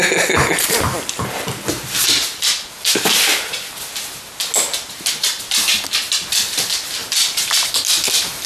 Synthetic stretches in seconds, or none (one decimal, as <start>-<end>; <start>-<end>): 3.3-3.9